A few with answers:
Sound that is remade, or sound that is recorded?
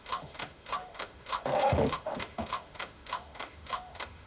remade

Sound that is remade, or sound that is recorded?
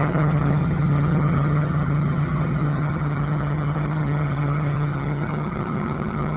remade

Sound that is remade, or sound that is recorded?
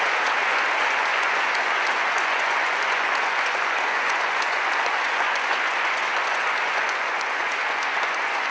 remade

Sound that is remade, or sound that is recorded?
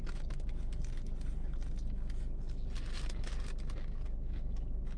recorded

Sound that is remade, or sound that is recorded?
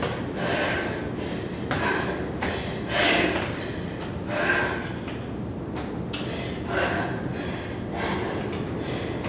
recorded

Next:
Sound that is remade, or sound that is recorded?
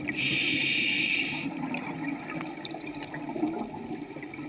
recorded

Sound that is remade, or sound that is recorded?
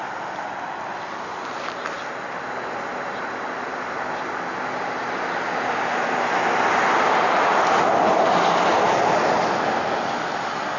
recorded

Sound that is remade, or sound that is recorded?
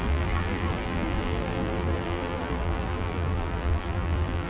remade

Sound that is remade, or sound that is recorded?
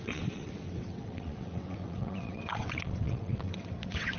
remade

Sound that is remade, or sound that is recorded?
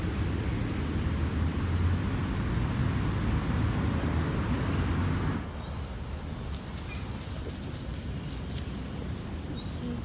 recorded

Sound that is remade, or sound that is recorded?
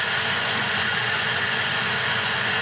remade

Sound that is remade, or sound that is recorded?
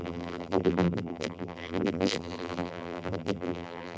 remade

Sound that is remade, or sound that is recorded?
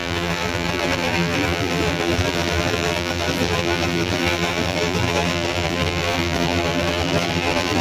remade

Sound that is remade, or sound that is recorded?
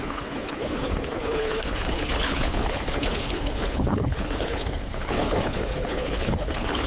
remade